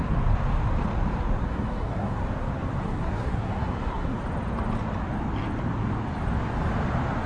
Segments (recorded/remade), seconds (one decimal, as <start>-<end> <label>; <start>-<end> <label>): 0.0-1.4 recorded; 1.4-2.2 remade; 2.2-2.8 recorded; 2.8-4.2 remade; 4.2-7.3 recorded